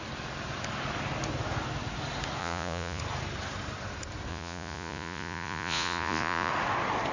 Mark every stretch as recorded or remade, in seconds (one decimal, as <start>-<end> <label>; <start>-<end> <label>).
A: 0.0-2.4 recorded; 2.4-3.0 remade; 3.0-4.3 recorded; 4.3-6.5 remade; 6.5-7.1 recorded